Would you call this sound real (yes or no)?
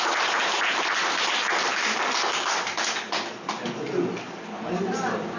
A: yes